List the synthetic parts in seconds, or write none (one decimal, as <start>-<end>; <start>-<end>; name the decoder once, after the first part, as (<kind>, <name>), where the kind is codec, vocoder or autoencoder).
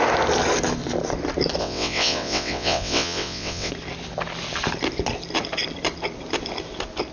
1.6-3.7 (vocoder, WaveNeXt)